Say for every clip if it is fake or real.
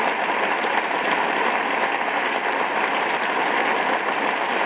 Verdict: real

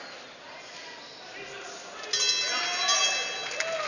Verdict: real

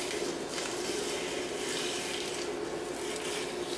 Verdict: real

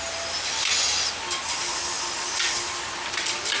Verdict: real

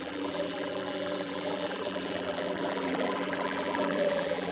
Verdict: fake